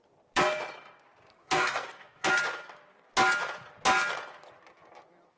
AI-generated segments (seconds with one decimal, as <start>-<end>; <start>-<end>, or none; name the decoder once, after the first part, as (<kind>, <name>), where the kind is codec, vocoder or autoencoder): 1.3-2.3 (codec, SNAC)